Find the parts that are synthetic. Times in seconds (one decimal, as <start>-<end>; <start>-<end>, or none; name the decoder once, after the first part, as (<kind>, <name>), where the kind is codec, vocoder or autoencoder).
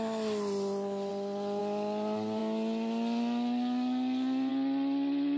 none